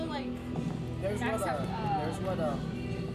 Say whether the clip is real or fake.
real